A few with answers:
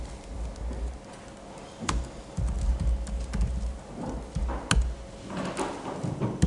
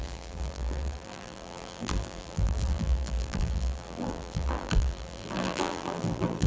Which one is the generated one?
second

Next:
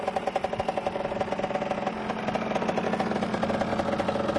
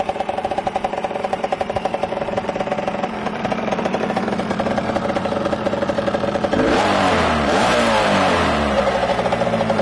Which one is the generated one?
second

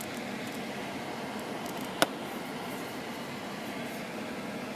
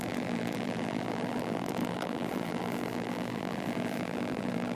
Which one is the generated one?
second